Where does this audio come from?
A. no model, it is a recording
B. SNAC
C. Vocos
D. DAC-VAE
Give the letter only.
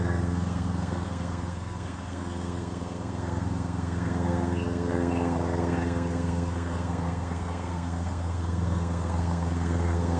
B